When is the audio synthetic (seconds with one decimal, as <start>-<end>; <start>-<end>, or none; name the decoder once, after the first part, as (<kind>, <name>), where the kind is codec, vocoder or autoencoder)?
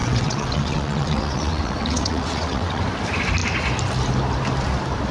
0.0-2.8 (vocoder, WaveNeXt)